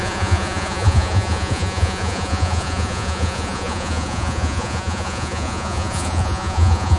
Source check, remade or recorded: remade